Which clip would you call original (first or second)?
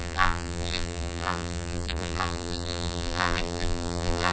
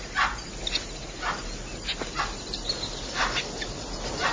second